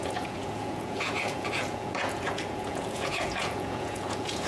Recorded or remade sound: remade